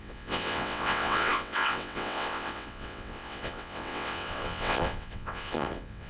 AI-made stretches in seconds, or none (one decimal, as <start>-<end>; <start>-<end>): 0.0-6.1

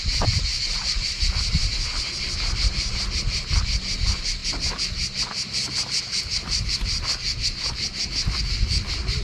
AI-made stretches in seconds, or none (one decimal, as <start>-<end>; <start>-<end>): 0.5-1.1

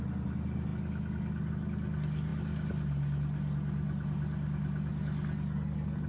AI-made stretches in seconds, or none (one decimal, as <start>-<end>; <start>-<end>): none